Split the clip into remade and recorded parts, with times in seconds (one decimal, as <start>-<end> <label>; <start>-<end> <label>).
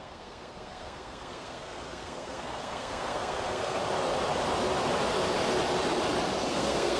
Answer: 0.0-3.8 remade; 3.8-6.5 recorded; 6.5-7.0 remade